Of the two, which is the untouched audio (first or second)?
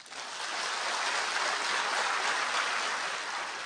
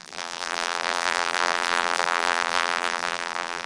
first